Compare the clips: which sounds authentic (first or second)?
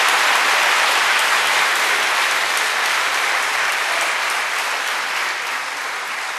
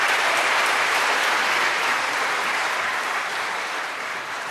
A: first